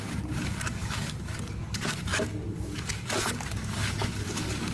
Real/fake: fake